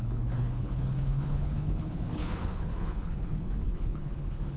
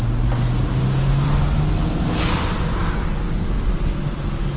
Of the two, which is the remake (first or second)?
first